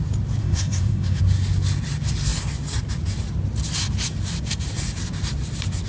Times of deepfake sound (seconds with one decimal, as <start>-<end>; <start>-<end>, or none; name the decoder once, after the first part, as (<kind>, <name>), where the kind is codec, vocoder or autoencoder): 0.4-1.2 (codec, SNAC)